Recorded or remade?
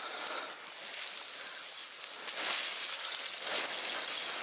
recorded